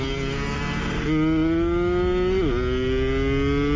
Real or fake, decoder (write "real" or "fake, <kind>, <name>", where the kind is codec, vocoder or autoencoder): real